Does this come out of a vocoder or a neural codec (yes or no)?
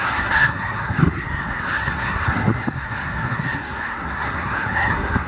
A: yes